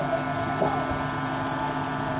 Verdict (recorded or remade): recorded